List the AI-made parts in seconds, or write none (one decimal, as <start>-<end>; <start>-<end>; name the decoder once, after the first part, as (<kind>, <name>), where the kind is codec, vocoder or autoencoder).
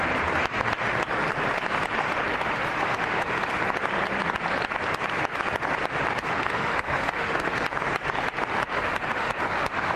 2.3-3.6 (autoencoder, DAC-VAE); 6.1-7.6; 8.5-10.0